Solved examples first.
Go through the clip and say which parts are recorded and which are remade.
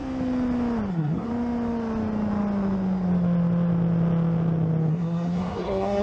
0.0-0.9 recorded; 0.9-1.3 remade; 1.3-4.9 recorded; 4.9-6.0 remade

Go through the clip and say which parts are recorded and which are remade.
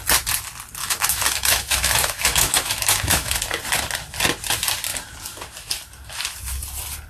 0.0-0.8 recorded; 0.8-3.4 remade; 3.4-7.1 recorded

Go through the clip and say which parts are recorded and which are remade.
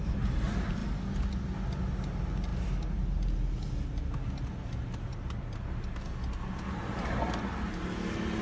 0.0-8.4 recorded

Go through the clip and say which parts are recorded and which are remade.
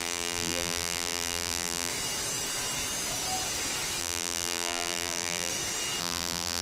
0.0-1.9 remade; 1.9-4.0 recorded; 4.0-5.5 remade; 5.5-6.0 recorded; 6.0-6.6 remade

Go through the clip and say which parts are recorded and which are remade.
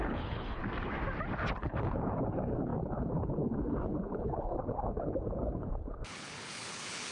0.0-0.6 remade; 0.6-1.6 recorded; 1.6-7.1 remade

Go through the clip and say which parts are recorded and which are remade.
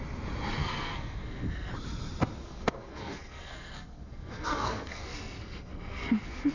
0.0-0.6 recorded; 0.6-1.7 remade; 1.7-2.4 recorded; 2.4-6.5 remade